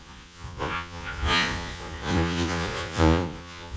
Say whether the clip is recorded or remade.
remade